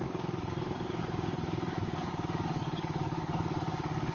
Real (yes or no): no